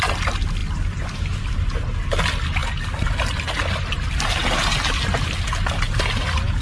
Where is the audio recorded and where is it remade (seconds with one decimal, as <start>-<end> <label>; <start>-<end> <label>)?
0.0-6.6 recorded